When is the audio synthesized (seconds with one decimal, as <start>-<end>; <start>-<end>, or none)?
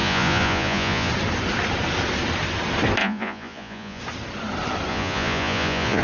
0.0-1.1; 3.0-4.0; 4.9-6.0